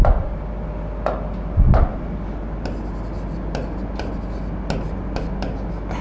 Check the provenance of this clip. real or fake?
real